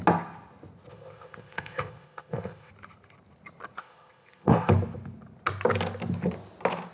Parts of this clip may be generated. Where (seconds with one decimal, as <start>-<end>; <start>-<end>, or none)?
0.9-2.7; 3.8-4.7